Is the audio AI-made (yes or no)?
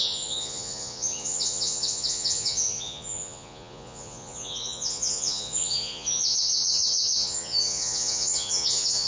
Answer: yes